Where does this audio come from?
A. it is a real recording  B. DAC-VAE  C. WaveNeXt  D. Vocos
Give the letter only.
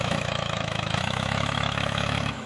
B